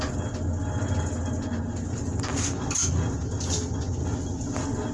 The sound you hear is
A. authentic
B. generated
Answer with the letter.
A